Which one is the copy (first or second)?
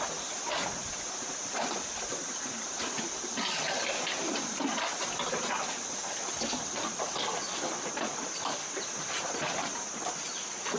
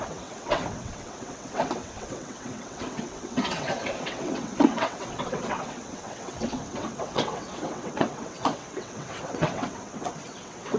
second